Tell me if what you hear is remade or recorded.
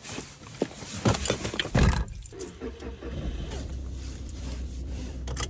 remade